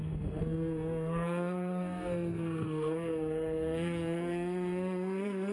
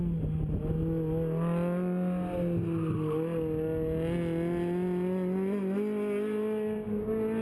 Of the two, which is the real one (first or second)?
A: second